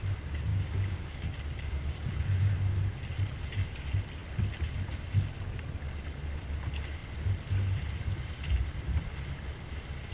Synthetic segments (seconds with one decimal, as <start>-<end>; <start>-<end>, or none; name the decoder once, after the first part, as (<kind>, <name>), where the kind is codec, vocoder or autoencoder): 0.5-2.1 (codec, DAC)